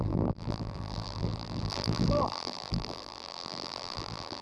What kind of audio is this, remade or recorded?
remade